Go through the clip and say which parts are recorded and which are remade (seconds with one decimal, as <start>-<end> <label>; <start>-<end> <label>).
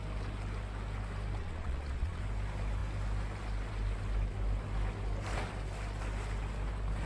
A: 0.0-1.4 recorded; 1.4-2.2 remade; 2.2-7.1 recorded